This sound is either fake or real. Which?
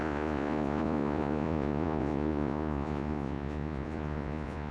fake